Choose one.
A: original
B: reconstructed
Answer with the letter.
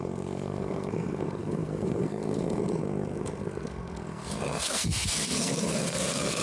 B